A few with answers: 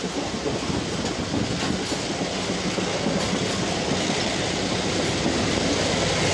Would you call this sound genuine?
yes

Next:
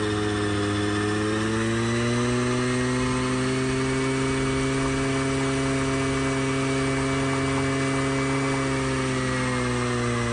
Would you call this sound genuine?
yes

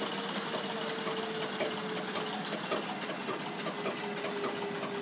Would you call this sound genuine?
yes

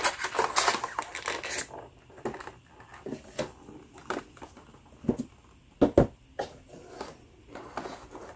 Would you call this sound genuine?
yes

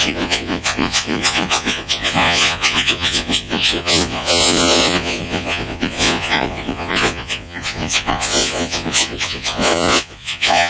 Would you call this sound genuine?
no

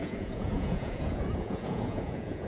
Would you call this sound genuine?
no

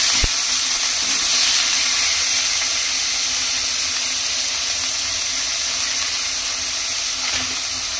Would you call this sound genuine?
yes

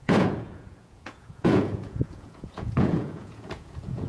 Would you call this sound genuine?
no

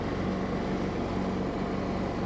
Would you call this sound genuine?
yes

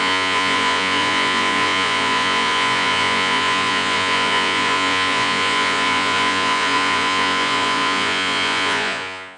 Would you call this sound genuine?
no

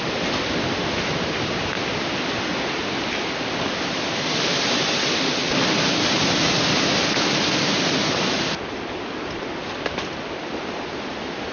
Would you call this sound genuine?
yes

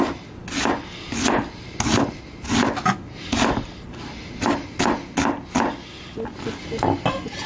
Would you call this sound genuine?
yes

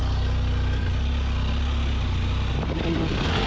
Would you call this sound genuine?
yes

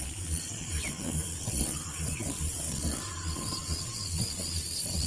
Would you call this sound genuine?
no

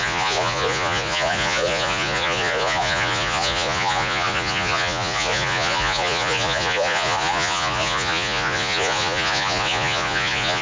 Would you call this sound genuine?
no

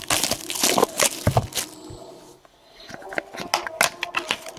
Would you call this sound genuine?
yes